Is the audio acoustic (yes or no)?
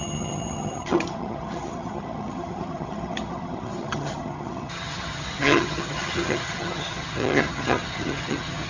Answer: no